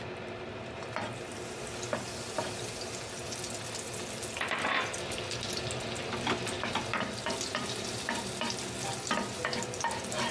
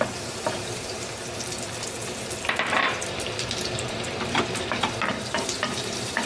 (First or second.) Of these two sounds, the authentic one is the first